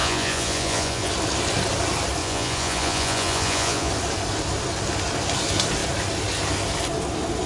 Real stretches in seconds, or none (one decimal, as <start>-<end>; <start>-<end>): 1.1-2.2; 3.9-7.5